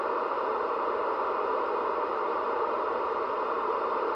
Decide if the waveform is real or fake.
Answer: fake